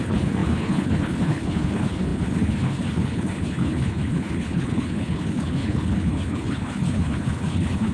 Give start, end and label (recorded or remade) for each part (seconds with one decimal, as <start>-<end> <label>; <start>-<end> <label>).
0.0-7.9 remade